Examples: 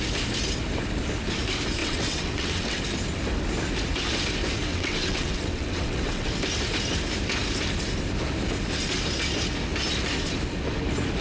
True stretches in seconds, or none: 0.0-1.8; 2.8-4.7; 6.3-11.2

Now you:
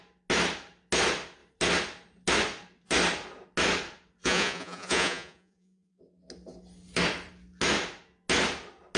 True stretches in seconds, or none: 0.0-4.2; 6.0-9.0

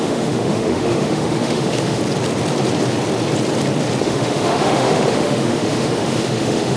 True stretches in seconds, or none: 2.0-4.0

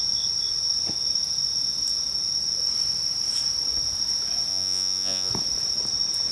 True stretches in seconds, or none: 0.0-4.5; 5.3-6.3

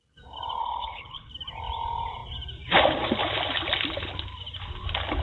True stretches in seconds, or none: 0.0-0.6; 1.3-5.2

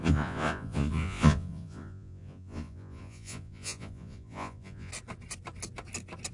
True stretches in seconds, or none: 4.9-6.3